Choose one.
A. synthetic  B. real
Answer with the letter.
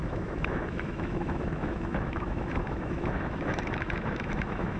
A